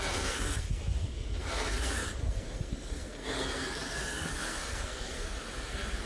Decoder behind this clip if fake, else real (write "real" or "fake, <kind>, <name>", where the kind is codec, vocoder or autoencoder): fake, codec, SNAC